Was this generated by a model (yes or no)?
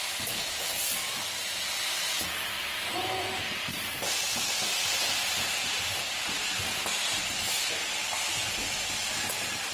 no